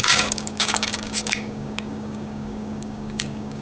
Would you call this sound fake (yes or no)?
yes